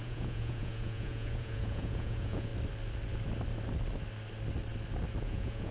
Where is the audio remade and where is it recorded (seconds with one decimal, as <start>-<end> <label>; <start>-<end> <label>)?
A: 0.0-2.5 remade; 2.5-5.2 recorded; 5.2-5.7 remade